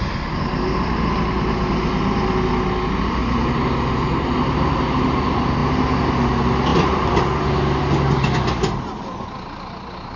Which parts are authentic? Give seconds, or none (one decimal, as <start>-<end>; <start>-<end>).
0.0-5.6; 6.3-6.7; 7.4-10.2